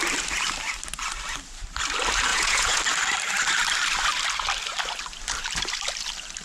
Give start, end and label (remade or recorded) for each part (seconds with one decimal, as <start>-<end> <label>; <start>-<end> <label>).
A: 0.0-2.3 recorded; 2.3-2.8 remade; 2.8-6.4 recorded